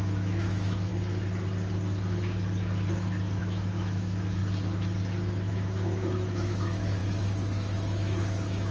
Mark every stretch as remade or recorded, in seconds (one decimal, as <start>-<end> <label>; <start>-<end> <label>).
0.0-0.9 remade; 0.9-3.4 recorded; 3.4-4.4 remade; 4.4-5.5 recorded; 5.5-8.7 remade